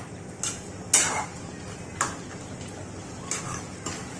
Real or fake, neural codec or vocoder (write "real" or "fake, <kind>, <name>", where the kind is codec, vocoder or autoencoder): real